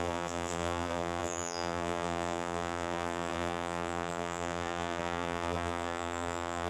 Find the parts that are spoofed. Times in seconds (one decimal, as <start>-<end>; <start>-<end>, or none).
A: 0.0-6.7